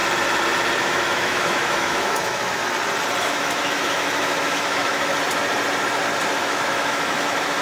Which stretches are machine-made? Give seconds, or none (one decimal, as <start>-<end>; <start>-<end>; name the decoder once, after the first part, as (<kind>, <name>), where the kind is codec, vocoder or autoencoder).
0.8-2.6 (autoencoder, DAC-VAE); 3.2-5.1; 6.4-7.6